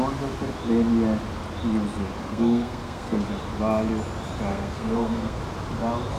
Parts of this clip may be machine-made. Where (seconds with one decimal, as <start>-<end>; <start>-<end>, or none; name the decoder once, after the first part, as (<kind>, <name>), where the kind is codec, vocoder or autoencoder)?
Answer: 2.2-3.2 (codec, SNAC); 4.5-5.4